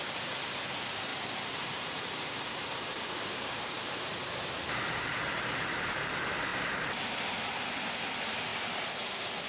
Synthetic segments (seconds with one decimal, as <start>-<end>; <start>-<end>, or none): 1.1-6.0